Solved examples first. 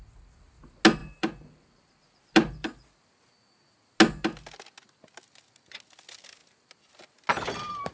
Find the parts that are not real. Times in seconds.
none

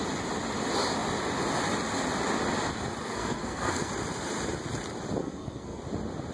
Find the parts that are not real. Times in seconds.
3.0-3.9 (codec, SNAC); 5.2-5.8

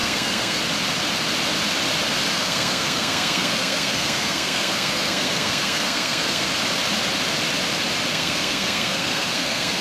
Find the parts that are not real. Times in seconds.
0.0-0.6 (codec, SNAC); 2.3-6.5; 8.1-9.8

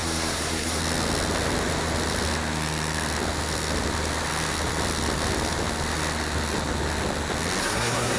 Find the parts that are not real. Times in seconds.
0.0-0.8 (codec, SNAC); 7.6-8.2

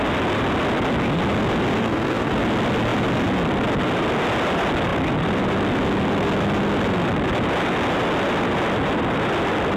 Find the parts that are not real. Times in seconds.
1.8-2.3 (codec, SNAC)

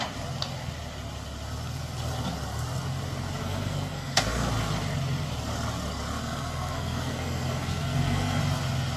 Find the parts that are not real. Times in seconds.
3.4-4.5 (codec, SNAC); 6.2-8.4